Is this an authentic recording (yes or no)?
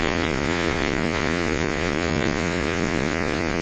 no